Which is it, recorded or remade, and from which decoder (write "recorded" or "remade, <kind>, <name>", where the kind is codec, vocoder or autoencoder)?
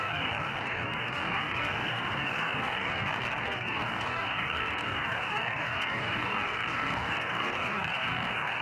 remade, codec, DAC